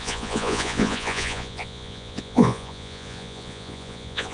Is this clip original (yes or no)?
no